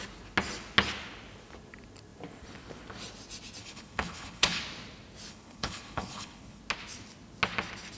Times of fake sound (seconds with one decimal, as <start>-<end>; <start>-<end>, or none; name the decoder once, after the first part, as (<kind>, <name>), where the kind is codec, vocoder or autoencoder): 3.6-4.6 (codec, HILCodec); 5.3-6.6